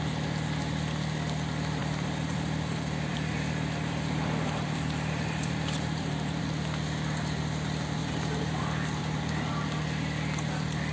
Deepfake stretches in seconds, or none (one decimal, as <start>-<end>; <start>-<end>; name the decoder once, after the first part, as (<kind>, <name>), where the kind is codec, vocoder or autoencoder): 1.8-6.4 (vocoder, BigVGAN v2); 8.0-8.6; 9.0-9.5